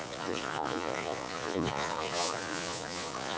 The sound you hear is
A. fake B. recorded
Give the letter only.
A